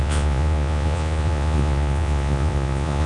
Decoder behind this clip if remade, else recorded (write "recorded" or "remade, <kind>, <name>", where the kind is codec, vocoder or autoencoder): remade, vocoder, Vocos